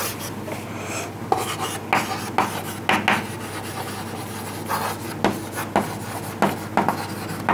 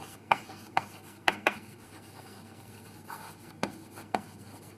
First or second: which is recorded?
first